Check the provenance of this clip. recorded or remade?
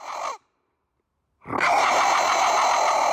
recorded